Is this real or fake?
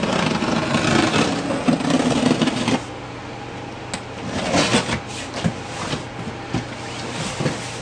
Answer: real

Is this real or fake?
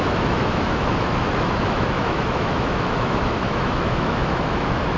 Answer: fake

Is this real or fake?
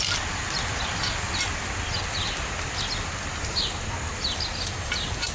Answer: real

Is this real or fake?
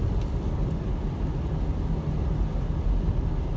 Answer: real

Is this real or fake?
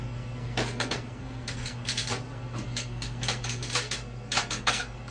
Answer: fake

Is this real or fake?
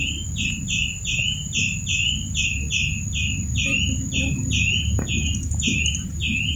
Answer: real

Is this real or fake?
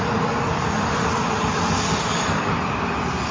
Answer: real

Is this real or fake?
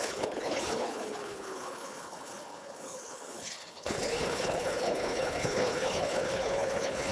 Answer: fake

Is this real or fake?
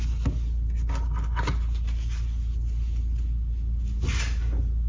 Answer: real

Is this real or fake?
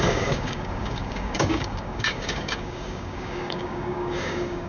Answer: fake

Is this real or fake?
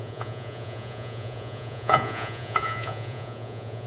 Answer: fake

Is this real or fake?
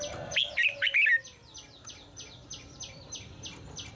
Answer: real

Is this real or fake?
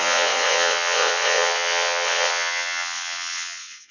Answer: fake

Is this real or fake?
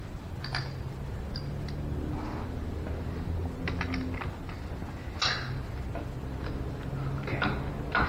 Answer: real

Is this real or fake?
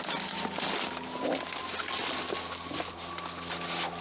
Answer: real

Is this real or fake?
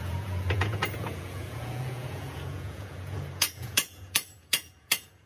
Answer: fake